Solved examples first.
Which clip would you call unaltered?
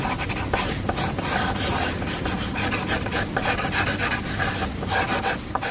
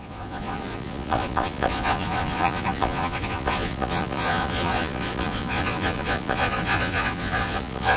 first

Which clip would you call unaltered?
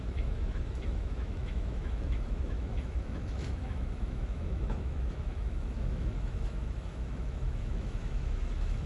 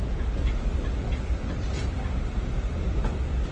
second